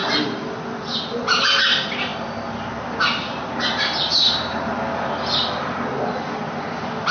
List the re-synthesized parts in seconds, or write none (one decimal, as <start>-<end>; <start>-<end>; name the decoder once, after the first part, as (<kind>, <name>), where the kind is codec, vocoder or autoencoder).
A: none